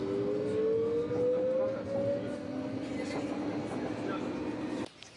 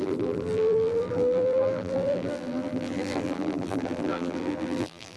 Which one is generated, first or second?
second